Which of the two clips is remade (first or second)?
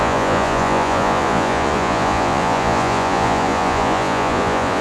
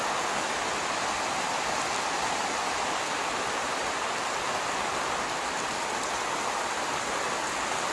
first